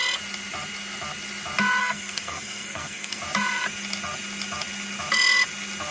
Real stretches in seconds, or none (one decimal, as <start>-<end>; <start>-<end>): 0.0-1.8; 3.2-5.9